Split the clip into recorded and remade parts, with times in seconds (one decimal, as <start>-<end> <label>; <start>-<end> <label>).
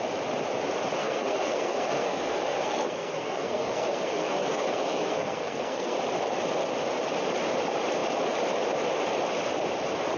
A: 0.0-1.0 recorded; 1.0-6.0 remade; 6.0-10.2 recorded